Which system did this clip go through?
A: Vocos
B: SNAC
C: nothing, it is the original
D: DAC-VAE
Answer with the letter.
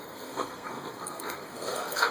B